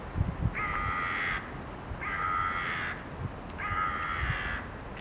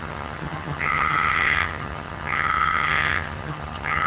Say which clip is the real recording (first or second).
first